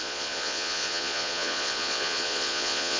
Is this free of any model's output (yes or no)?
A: no